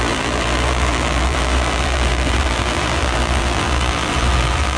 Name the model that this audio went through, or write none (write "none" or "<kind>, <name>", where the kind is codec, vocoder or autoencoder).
vocoder, BigVGAN v2